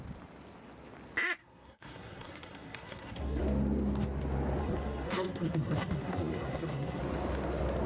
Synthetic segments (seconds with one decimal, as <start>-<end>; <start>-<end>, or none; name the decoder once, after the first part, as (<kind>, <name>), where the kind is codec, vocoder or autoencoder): 1.4-3.4 (codec, SNAC); 4.6-7.0